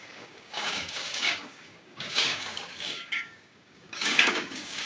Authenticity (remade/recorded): remade